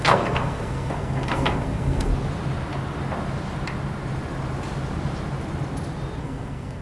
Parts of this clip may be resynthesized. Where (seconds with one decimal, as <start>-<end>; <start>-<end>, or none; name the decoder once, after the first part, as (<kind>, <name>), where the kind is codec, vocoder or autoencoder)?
0.0-2.1 (codec, SNAC); 6.2-6.8